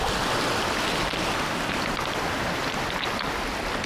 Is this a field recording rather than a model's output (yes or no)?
yes